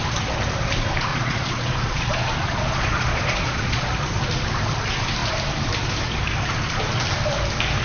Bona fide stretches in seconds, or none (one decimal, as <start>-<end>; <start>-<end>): 0.0-1.1; 3.8-7.8

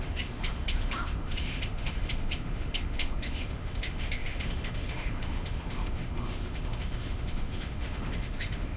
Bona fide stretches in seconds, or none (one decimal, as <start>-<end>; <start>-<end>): none

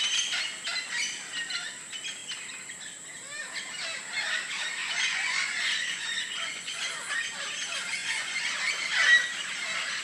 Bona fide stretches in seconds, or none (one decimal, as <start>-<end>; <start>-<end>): 0.0-4.8; 6.9-8.0; 8.5-10.0

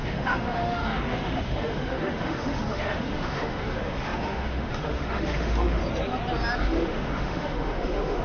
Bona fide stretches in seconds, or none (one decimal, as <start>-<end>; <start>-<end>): 5.8-6.6

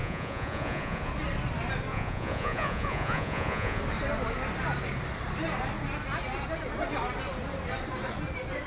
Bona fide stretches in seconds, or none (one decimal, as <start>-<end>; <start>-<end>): 1.1-1.9; 3.8-8.7